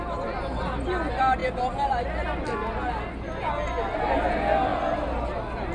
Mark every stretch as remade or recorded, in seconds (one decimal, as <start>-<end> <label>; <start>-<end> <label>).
0.0-5.7 recorded